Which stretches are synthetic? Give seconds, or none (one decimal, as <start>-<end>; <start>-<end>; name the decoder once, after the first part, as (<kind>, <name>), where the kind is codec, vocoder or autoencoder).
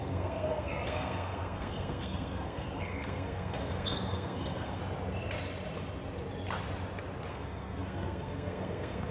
0.0-4.8 (codec, SNAC); 7.3-9.1